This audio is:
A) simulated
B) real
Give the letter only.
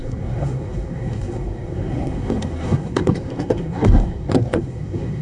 A